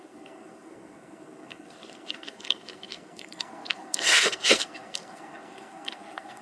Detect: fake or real fake